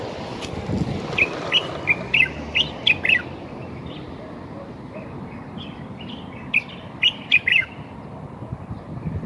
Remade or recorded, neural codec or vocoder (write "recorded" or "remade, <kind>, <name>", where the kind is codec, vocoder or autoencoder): recorded